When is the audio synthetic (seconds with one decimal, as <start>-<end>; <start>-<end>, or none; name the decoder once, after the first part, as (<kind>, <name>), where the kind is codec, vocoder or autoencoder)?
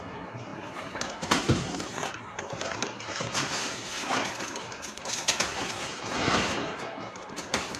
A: 0.0-7.8 (codec, SNAC)